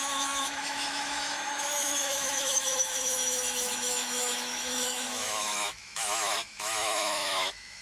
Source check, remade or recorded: remade